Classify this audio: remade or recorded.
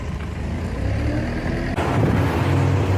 recorded